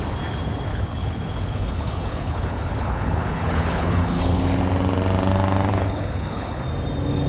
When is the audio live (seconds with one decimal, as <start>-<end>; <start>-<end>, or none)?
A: 0.0-0.7; 4.4-5.7; 6.6-7.3